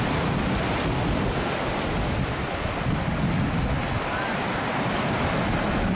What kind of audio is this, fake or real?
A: real